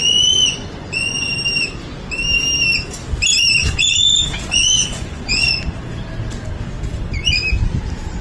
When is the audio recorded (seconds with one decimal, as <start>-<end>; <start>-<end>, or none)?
1.3-3.6; 6.0-6.9; 7.4-8.2

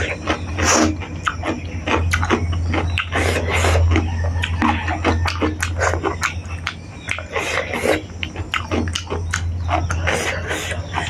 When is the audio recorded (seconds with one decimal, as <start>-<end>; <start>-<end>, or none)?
0.0-11.1

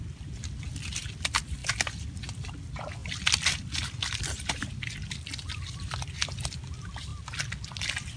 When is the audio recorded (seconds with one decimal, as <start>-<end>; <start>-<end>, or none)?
0.0-1.6; 2.5-3.0; 4.9-8.2

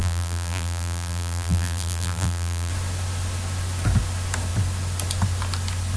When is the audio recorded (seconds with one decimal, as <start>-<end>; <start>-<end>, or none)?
2.7-6.0